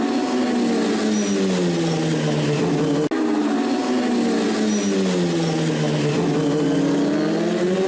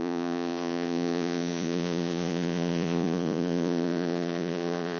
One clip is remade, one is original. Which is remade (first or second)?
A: second